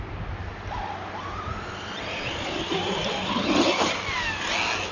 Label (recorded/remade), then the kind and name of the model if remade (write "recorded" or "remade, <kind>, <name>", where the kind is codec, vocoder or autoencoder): recorded